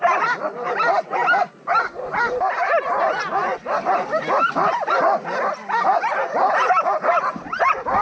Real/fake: real